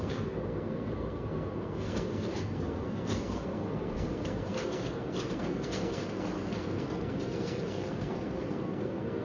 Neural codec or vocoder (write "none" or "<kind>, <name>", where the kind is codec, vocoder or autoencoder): codec, SNAC